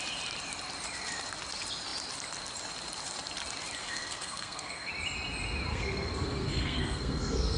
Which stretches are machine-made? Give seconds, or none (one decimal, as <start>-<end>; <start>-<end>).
3.8-4.9; 5.7-7.6